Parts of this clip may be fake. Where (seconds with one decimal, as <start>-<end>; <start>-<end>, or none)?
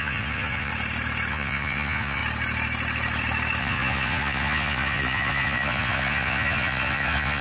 0.0-0.7; 1.3-2.2; 3.6-7.4